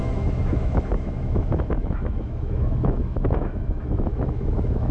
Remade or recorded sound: remade